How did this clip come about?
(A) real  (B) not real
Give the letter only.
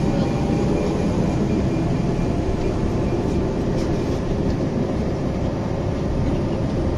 B